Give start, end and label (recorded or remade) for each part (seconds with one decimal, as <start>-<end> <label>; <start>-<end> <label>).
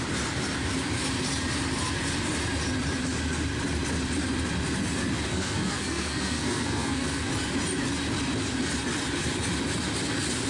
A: 0.0-5.3 recorded; 5.3-7.3 remade; 7.3-10.5 recorded